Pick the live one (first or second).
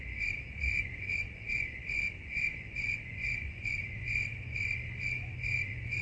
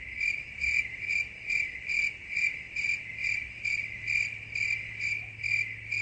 second